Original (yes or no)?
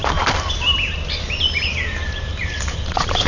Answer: no